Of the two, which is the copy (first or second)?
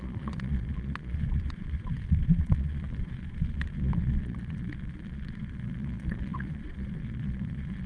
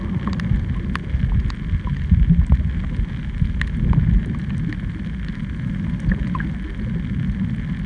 first